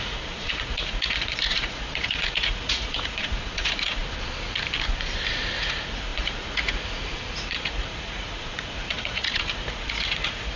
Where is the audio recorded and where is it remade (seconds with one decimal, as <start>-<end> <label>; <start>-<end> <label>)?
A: 0.0-4.0 remade; 4.0-5.6 recorded; 5.6-10.6 remade